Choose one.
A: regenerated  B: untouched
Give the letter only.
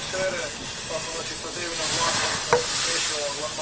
B